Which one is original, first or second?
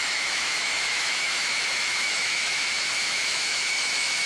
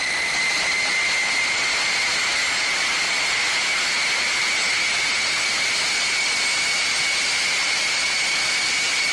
second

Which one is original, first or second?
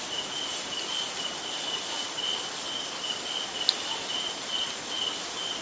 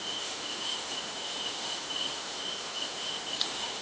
first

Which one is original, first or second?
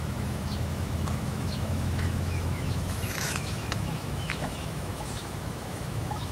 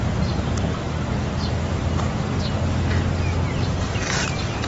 second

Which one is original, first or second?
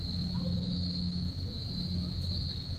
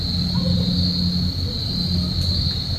second